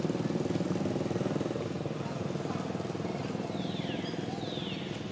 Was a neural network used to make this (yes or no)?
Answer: no